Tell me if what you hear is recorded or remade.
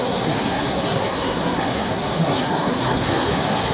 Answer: remade